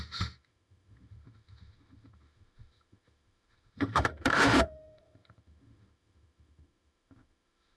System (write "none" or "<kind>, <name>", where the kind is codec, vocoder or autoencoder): autoencoder, DAC-VAE